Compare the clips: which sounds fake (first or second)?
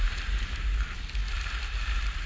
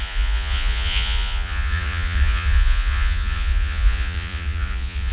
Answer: second